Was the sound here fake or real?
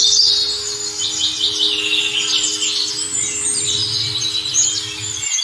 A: real